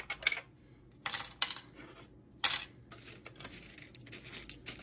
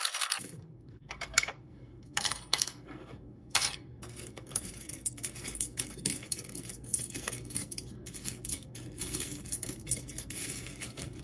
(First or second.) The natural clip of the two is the first